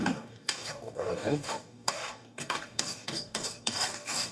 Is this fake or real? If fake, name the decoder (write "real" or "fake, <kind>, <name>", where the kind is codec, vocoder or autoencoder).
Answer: fake, codec, DAC